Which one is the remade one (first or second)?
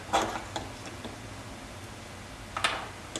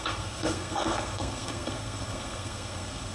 second